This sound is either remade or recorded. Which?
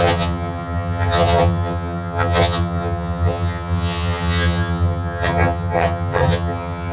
remade